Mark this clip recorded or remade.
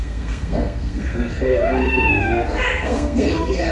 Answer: remade